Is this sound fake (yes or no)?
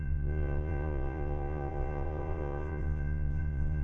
yes